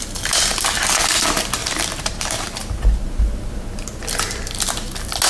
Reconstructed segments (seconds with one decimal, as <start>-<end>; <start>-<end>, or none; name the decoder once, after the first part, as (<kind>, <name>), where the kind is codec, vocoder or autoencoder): 1.6-2.8 (vocoder, BigVGAN v2)